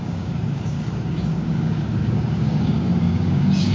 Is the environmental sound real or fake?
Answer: fake